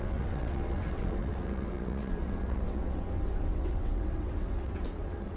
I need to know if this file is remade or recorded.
remade